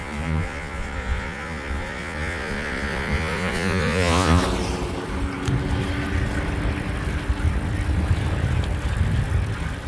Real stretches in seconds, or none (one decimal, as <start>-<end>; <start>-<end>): 4.4-9.9